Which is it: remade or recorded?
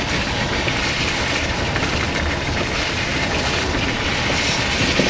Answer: recorded